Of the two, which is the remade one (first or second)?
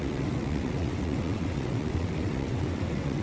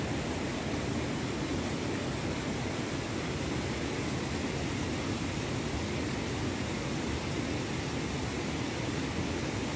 first